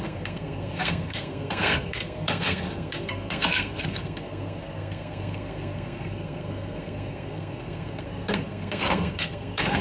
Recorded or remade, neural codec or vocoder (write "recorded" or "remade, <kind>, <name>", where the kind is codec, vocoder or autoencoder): remade, codec, SNAC